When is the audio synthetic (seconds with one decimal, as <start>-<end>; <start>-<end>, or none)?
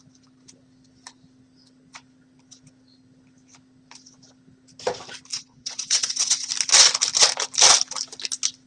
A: 5.3-6.5